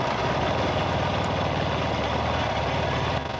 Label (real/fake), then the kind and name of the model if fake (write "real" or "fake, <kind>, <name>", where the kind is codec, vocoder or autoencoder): real